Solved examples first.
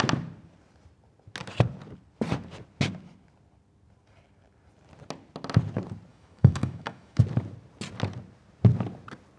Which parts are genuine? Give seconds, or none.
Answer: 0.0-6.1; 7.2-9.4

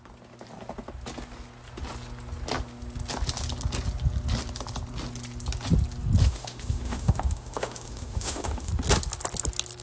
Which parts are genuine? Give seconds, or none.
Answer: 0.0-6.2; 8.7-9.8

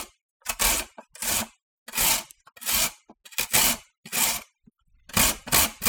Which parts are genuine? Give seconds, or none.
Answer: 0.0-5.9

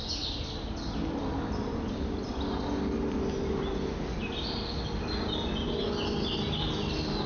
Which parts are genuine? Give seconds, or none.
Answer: 0.0-7.3

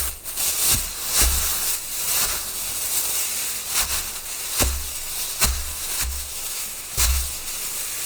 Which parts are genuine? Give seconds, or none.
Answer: 0.0-5.7; 7.2-8.1